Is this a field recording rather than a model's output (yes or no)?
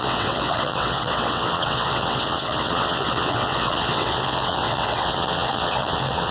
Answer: no